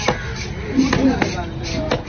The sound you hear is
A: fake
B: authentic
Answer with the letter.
B